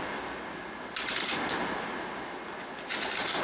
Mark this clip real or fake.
real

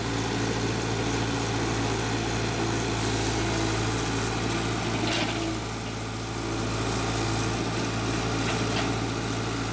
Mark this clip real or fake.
real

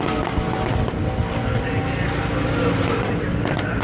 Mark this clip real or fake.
real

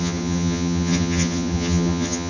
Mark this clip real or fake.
fake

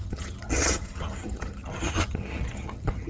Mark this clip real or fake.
fake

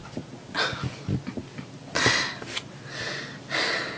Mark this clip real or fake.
real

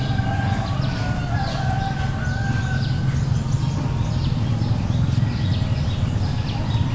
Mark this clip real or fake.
real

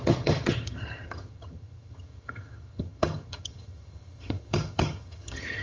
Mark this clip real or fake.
fake